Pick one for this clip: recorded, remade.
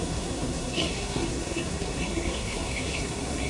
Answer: remade